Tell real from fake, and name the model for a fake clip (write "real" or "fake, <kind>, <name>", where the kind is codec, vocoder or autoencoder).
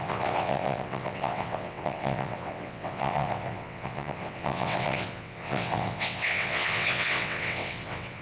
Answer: fake, vocoder, WaveNeXt